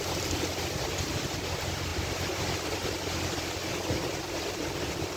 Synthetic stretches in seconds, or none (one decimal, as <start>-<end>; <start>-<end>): 3.7-4.7